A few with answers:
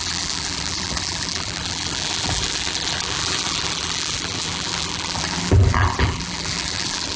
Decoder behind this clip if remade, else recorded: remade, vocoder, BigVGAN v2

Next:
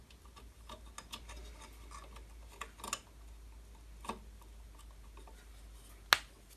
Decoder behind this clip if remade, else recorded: recorded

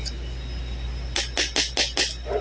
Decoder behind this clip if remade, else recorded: recorded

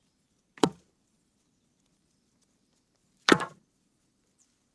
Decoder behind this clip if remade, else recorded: remade, vocoder, BigVGAN v2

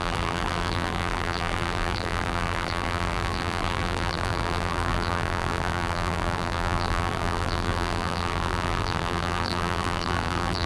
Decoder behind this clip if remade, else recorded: remade, vocoder, BigVGAN v2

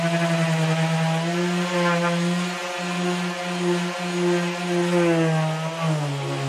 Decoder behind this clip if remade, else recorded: recorded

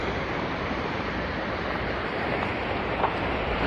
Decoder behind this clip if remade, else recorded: remade, vocoder, BigVGAN v2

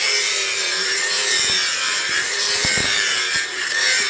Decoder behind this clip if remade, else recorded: remade, vocoder, BigVGAN v2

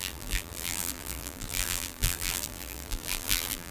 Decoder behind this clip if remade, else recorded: remade, vocoder, BigVGAN v2